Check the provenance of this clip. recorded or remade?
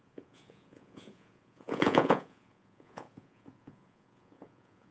remade